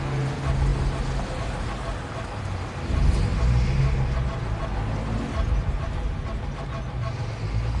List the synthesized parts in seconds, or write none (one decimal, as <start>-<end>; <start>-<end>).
none